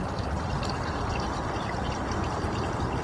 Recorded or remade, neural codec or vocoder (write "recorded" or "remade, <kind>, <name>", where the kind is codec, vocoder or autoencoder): recorded